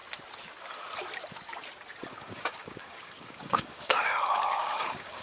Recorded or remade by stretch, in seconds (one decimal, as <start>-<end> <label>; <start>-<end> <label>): 0.0-2.1 recorded; 2.1-5.2 remade